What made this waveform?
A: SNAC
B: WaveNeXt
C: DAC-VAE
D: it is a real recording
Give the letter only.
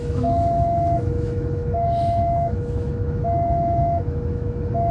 C